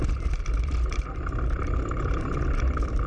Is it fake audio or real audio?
fake